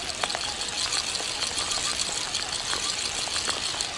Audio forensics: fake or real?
real